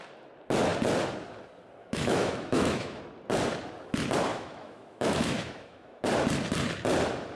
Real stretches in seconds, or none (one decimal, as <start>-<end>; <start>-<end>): 0.0-1.8; 3.0-4.3; 6.0-7.4